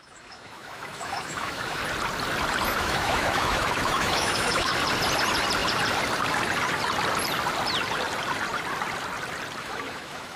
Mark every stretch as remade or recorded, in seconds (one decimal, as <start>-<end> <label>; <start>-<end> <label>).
0.0-1.8 remade; 1.8-2.8 recorded; 2.8-4.7 remade; 4.7-9.6 recorded; 9.6-10.4 remade